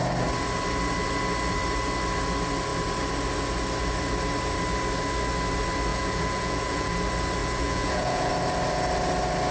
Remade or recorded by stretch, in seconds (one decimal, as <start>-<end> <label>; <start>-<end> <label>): 0.0-5.9 recorded; 5.9-6.9 remade; 6.9-7.4 recorded; 7.4-8.3 remade; 8.3-9.5 recorded